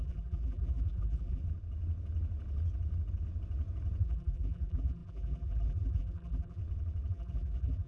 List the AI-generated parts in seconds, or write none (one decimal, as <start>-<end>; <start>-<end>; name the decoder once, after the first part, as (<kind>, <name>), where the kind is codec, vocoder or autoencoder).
0.0-1.4 (vocoder, BigVGAN v2); 4.0-6.6; 7.1-7.9